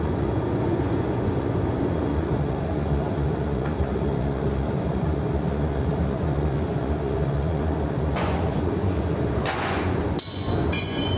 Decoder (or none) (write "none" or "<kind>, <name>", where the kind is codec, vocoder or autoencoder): vocoder, Vocos